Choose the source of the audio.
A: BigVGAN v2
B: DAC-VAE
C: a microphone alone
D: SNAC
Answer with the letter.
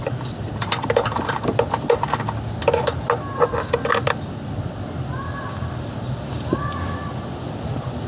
C